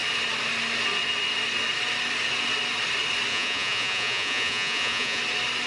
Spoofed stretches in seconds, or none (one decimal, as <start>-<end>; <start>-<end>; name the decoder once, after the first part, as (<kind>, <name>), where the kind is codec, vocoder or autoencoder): 3.3-5.2 (vocoder, Vocos)